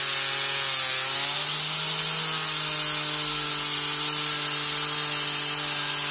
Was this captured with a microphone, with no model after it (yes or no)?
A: yes